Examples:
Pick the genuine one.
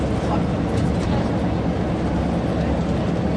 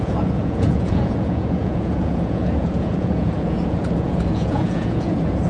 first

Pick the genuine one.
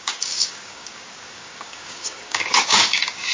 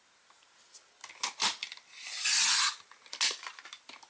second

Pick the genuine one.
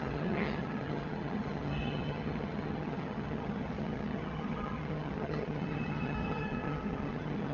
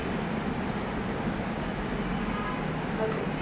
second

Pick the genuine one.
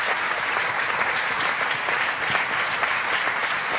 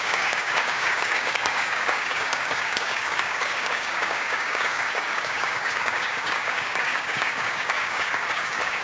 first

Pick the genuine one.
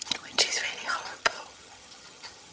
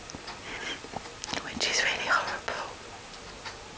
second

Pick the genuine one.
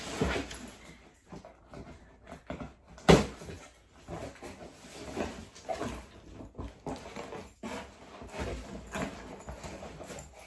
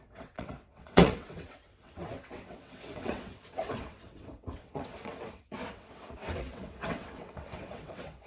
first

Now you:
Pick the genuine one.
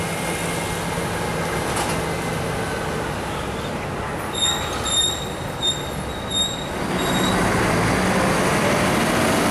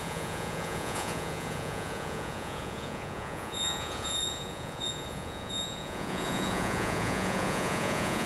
first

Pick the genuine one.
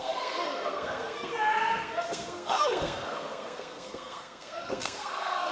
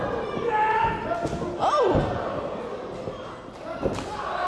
second